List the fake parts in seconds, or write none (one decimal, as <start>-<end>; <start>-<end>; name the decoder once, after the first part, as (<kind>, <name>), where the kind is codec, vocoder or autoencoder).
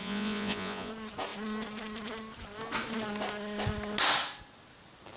0.0-0.9 (vocoder, Vocos)